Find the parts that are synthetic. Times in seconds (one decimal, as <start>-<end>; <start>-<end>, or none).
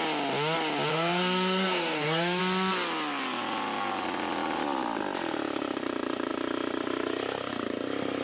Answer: 0.9-2.4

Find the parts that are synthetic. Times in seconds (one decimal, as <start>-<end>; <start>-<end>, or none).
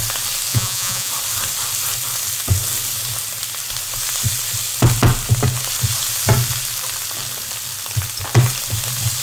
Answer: 0.5-1.1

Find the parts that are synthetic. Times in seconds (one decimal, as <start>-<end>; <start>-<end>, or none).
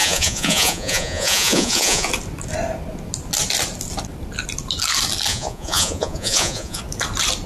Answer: 0.0-2.1; 5.3-6.8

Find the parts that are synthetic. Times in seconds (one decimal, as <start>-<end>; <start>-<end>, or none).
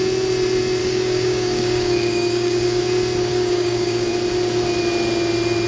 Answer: 0.8-2.8; 3.3-4.1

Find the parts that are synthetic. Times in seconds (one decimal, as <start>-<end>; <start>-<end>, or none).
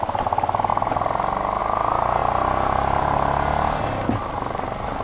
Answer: none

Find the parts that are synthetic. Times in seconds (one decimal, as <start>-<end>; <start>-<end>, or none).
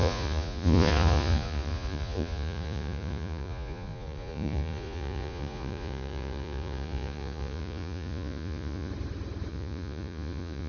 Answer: 0.0-8.9; 9.5-10.7